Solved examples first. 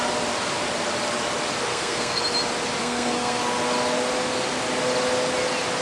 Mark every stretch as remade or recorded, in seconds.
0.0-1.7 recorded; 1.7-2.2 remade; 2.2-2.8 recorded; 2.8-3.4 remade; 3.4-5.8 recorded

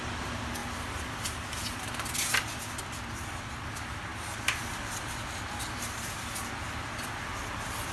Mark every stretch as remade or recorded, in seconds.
0.0-7.9 recorded